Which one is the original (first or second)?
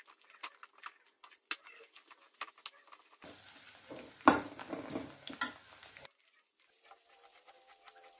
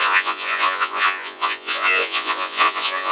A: first